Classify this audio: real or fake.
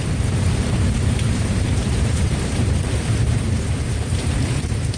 fake